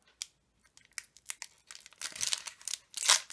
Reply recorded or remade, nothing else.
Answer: recorded